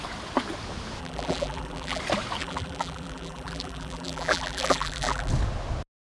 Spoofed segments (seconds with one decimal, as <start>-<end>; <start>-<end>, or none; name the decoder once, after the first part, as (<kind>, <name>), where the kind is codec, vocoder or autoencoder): 1.0-2.0 (vocoder, BigVGAN v2); 2.4-5.3